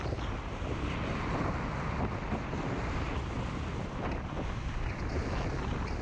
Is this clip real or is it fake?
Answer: real